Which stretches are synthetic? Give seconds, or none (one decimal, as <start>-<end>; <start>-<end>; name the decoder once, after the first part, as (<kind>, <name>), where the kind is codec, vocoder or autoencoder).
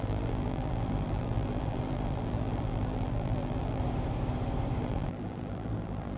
0.0-3.8 (vocoder, BigVGAN v2); 4.8-6.2